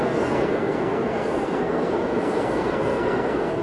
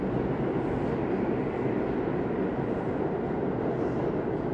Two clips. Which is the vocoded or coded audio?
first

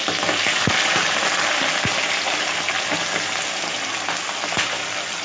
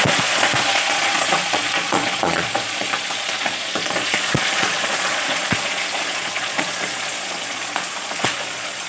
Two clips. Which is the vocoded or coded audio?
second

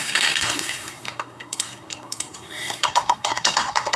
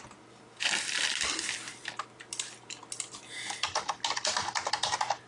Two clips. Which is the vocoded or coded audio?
first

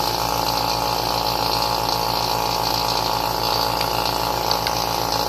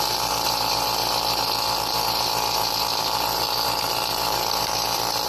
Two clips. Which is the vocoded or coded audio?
second